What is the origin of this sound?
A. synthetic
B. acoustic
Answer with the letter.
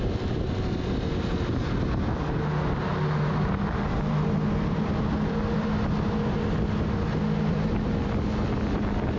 B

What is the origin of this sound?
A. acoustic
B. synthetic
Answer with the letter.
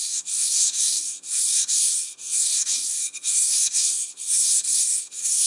B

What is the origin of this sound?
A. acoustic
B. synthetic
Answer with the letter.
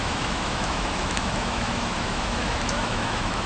B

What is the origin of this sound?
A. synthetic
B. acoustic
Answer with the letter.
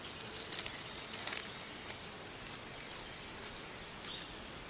B